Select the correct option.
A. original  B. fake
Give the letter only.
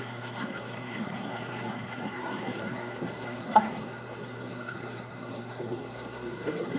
B